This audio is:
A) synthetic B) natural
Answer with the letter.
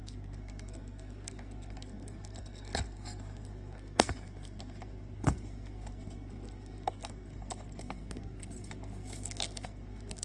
A